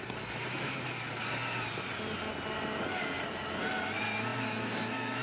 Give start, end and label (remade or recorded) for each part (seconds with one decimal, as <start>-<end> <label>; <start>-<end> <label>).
0.0-5.2 recorded